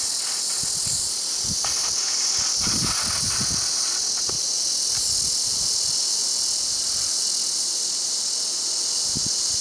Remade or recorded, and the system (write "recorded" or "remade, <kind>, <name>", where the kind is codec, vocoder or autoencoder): recorded